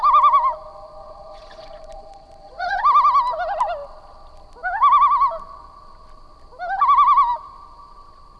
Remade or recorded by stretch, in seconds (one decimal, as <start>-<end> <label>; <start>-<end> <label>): 0.0-1.0 recorded; 1.0-2.8 remade; 2.8-8.4 recorded